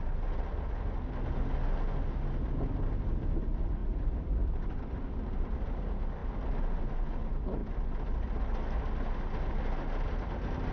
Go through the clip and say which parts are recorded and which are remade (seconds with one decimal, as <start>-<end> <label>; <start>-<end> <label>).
0.0-3.8 recorded; 3.8-5.8 remade; 5.8-7.6 recorded; 7.6-8.4 remade; 8.4-10.7 recorded